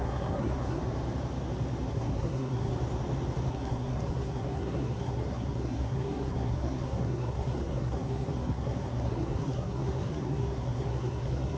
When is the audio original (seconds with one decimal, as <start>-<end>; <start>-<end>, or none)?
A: 0.8-1.9; 2.7-3.5